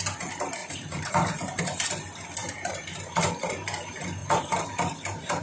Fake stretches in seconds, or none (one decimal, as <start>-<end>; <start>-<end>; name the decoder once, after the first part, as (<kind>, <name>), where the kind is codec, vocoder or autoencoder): 0.6-1.6 (vocoder, BigVGAN v2); 2.4-3.3; 4.2-5.4